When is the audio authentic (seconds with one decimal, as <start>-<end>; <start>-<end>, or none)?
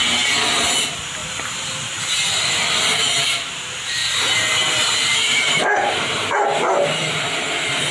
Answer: 0.0-1.2; 2.1-3.0; 3.6-4.0; 6.3-7.9